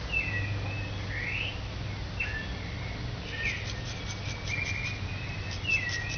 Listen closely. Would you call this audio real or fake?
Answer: real